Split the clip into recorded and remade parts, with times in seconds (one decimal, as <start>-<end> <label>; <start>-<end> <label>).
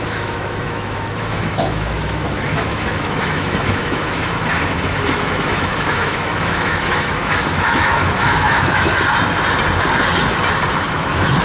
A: 0.0-8.9 remade; 8.9-10.7 recorded; 10.7-11.4 remade